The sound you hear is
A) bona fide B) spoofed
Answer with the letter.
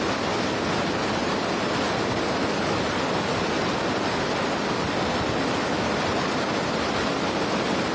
A